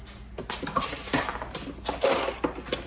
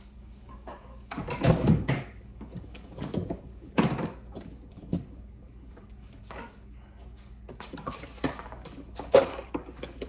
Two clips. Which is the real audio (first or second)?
first